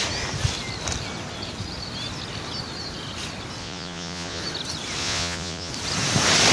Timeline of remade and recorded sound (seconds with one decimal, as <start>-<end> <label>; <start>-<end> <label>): 0.0-3.6 recorded; 3.6-4.4 remade; 4.4-5.0 recorded; 5.0-5.7 remade; 5.7-6.5 recorded